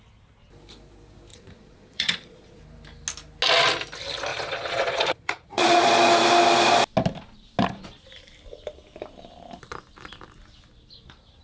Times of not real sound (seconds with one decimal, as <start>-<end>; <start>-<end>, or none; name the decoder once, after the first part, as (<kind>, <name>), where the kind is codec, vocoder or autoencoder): 1.3-2.6 (vocoder, Vocos); 4.3-6.1